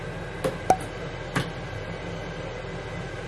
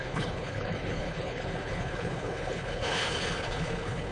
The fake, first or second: second